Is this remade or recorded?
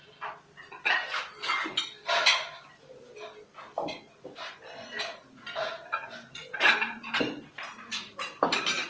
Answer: recorded